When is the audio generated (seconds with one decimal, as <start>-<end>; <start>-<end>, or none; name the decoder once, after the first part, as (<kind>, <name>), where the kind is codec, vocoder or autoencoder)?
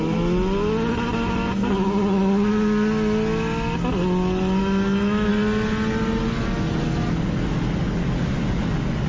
4.6-5.3 (autoencoder, DAC-VAE)